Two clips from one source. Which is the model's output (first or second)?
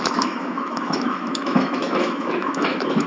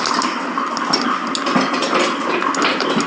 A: first